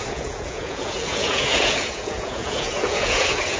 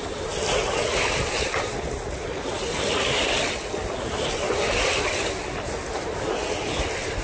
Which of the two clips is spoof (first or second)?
first